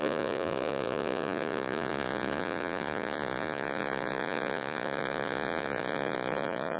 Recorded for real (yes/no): no